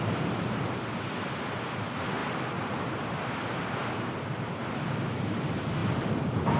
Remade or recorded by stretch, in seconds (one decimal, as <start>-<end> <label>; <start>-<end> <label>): 0.0-6.6 recorded

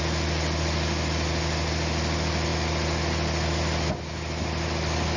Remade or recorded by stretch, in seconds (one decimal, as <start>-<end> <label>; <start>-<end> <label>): 0.0-5.2 recorded